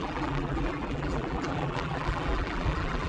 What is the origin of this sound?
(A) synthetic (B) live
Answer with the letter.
A